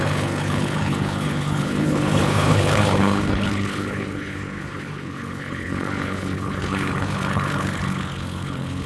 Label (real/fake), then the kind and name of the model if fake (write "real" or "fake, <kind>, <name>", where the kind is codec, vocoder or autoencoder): fake, codec, HILCodec